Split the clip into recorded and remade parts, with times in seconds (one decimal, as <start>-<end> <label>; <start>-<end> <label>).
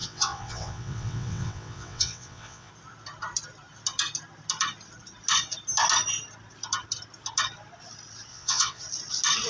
0.0-2.7 remade; 2.7-8.3 recorded; 8.3-8.8 remade; 8.8-9.5 recorded